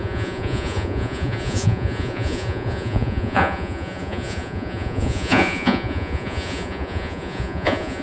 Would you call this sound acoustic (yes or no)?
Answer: no